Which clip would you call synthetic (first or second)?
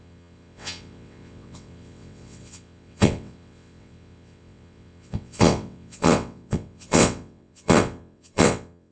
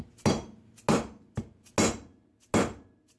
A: first